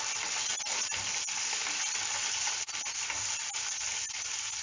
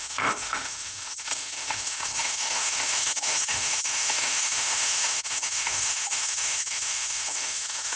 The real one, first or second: first